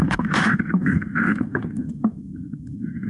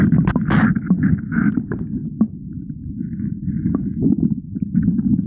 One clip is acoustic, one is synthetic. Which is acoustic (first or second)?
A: second